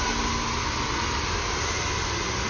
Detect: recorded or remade recorded